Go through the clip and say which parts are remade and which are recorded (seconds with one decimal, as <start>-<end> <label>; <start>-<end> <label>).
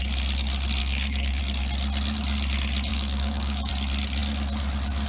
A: 0.0-0.8 recorded; 0.8-1.4 remade; 1.4-2.9 recorded; 2.9-3.7 remade; 3.7-5.1 recorded